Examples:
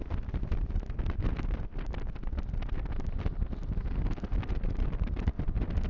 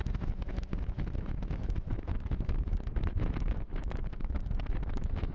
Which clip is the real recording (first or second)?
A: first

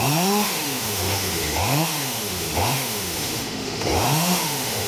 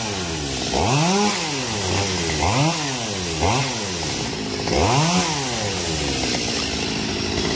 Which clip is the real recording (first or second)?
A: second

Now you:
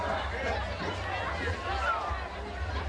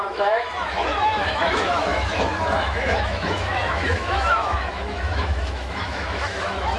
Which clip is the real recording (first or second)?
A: first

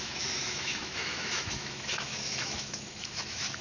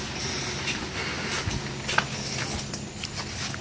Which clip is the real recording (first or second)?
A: second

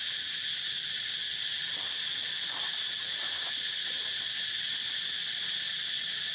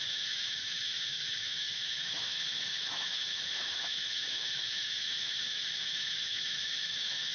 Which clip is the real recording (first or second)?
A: first